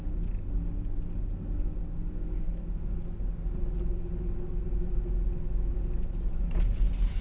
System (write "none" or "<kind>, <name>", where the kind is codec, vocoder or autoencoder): none